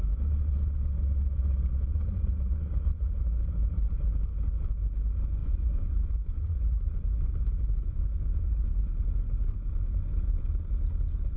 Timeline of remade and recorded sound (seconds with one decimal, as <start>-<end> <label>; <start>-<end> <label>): 0.0-1.9 recorded; 1.9-3.2 remade; 3.2-5.4 recorded; 5.4-6.9 remade; 6.9-11.4 recorded